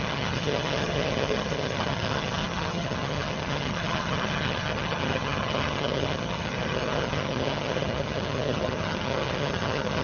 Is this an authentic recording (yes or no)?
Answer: no